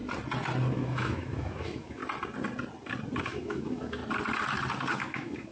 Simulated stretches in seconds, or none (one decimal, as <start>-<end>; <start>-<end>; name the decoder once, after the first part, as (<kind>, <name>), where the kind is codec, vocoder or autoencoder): 0.7-2.0 (autoencoder, DAC-VAE); 3.2-4.0; 4.9-5.5